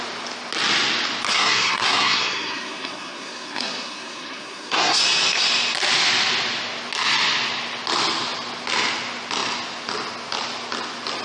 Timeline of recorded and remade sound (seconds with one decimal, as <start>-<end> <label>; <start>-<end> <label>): 0.0-1.3 recorded; 1.3-5.0 remade; 5.0-11.2 recorded

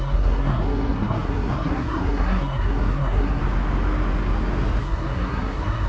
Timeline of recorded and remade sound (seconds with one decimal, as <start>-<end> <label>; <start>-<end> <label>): 0.0-3.4 remade; 3.4-4.8 recorded; 4.8-5.9 remade